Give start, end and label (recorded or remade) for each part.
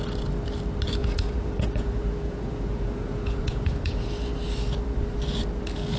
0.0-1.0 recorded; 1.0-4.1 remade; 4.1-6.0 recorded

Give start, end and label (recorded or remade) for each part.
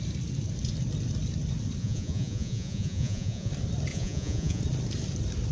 0.0-1.8 recorded; 1.8-3.5 remade; 3.5-3.9 recorded; 3.9-4.6 remade; 4.6-5.5 recorded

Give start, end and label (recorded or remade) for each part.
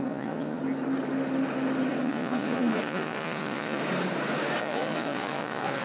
0.0-0.6 remade; 0.6-2.0 recorded; 2.0-3.8 remade; 3.8-4.6 recorded; 4.6-5.8 remade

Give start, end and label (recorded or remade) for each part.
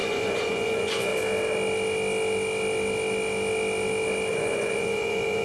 0.0-1.1 remade; 1.1-4.3 recorded; 4.3-5.4 remade